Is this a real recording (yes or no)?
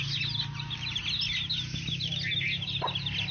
yes